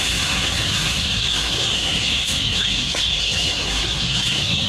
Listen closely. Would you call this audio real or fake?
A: fake